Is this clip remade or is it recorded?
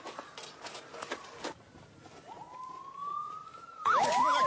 recorded